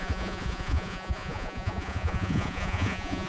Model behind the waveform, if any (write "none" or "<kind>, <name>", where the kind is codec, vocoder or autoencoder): vocoder, Vocos